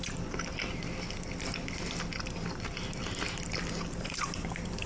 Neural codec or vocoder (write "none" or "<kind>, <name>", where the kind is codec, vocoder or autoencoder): none